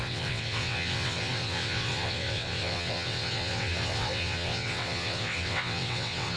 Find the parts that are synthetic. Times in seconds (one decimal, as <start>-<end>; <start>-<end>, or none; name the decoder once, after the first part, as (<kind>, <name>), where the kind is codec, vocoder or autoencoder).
0.0-6.4 (vocoder, WaveNeXt)